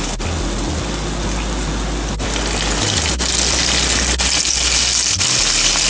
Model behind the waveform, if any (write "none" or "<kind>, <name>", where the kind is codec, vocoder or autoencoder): none